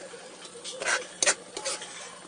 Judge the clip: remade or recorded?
recorded